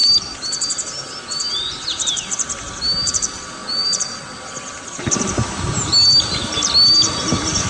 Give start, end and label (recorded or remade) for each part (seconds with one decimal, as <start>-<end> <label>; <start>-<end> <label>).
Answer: 0.0-7.7 recorded